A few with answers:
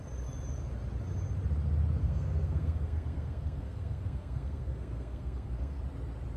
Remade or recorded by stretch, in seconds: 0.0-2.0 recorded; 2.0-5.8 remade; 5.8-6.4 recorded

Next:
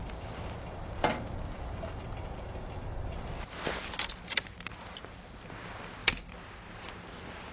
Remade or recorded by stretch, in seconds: 0.0-7.5 recorded

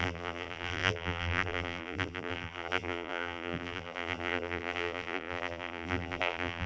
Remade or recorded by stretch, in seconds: 0.0-6.7 remade

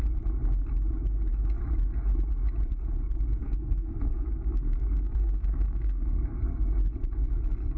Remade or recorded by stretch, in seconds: 0.0-3.4 recorded; 3.4-6.4 remade; 6.4-7.8 recorded

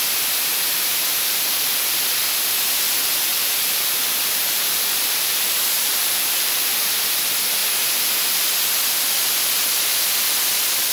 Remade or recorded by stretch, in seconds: 0.0-0.5 recorded; 0.5-1.3 remade; 1.3-3.3 recorded; 3.3-6.7 remade; 6.7-10.9 recorded